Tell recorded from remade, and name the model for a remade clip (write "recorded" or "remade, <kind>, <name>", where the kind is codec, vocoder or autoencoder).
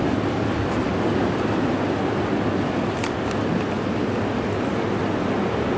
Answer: recorded